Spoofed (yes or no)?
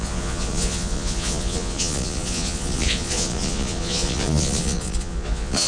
yes